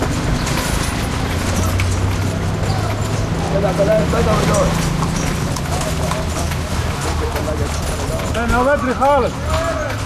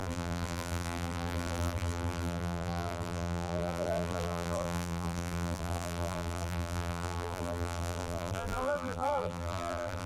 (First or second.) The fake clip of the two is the second